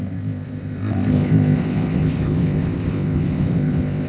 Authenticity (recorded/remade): remade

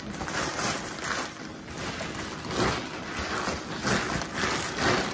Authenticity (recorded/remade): recorded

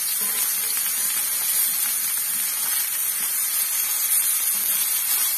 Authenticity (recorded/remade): recorded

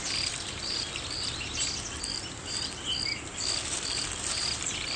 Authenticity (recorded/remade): recorded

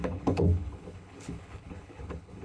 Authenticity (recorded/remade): remade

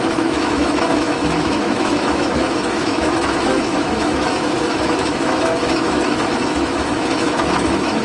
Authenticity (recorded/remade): remade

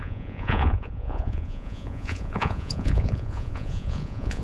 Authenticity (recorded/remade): remade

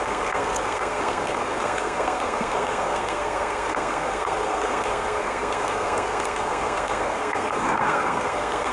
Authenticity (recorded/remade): remade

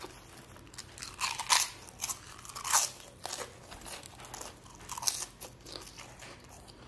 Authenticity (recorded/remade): recorded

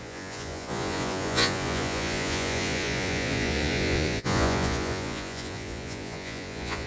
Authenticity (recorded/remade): remade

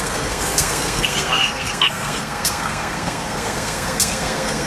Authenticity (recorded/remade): remade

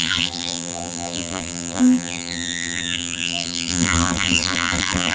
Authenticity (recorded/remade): remade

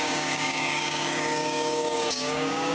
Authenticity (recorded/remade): remade